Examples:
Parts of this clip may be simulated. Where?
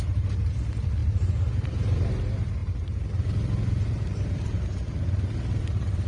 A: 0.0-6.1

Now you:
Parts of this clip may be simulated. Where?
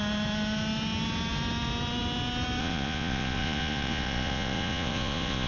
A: 2.6-5.5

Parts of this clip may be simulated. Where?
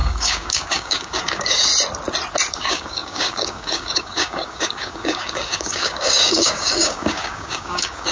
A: 0.0-1.7; 2.5-8.1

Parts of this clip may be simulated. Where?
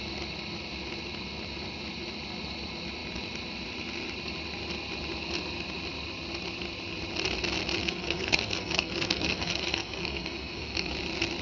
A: 7.8-10.9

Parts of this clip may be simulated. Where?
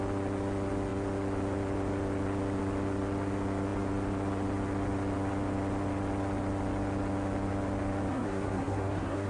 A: 8.1-9.3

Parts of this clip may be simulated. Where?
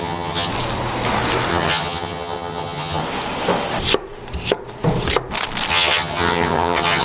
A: 0.0-0.5; 1.5-3.0; 5.7-7.0